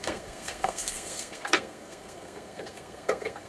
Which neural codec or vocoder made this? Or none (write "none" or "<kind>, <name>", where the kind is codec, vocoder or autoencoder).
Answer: codec, SNAC